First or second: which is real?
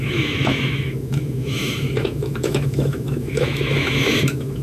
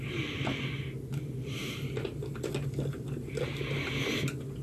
second